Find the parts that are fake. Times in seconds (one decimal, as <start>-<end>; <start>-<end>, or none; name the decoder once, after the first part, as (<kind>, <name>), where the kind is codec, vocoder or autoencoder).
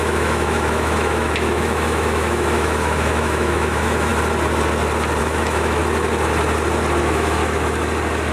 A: 0.0-4.1 (autoencoder, DAC-VAE); 5.2-5.8; 7.0-7.4